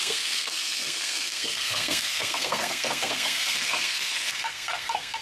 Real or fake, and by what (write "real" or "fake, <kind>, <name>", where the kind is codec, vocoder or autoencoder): fake, codec, SNAC